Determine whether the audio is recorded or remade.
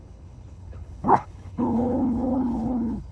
remade